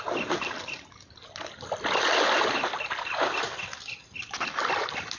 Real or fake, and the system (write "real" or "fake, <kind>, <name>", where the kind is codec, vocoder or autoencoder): real